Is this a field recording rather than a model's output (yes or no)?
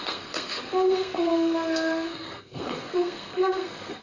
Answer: no